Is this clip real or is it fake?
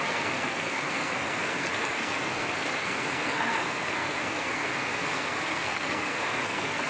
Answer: fake